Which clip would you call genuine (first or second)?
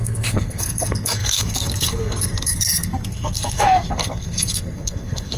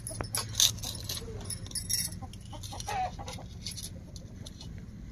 second